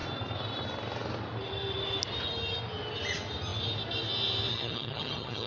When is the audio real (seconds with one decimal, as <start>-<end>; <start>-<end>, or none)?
0.0-4.5